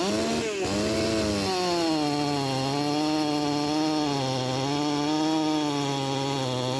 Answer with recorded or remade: recorded